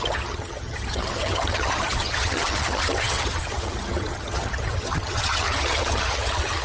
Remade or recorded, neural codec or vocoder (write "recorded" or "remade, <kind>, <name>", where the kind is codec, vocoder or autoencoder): remade, vocoder, HiFi-GAN